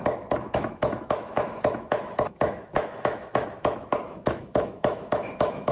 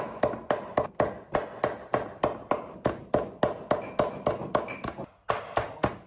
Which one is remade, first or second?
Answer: first